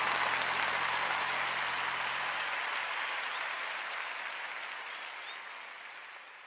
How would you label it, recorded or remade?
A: recorded